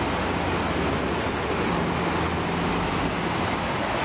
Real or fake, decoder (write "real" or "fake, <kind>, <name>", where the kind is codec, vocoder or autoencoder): real